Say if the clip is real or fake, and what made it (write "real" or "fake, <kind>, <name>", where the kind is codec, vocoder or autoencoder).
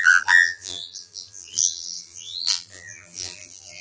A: fake, vocoder, BigVGAN v2